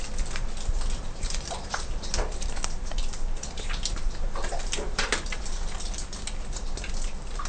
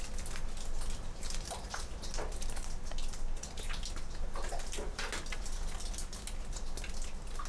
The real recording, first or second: second